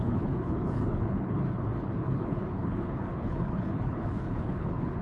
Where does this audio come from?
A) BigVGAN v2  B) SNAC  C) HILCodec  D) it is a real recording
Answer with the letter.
C